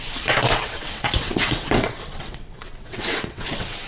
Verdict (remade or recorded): remade